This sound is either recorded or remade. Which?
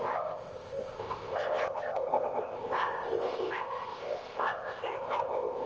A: remade